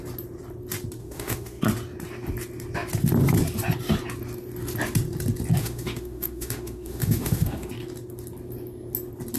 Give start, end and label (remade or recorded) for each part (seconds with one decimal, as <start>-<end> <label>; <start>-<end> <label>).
0.0-1.0 recorded; 1.0-1.6 remade; 1.6-5.6 recorded; 5.6-7.7 remade; 7.7-9.4 recorded